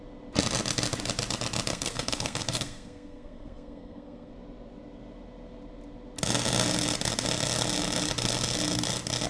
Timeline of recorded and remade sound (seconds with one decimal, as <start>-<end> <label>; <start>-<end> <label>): 0.0-1.7 recorded; 1.7-4.3 remade; 4.3-9.3 recorded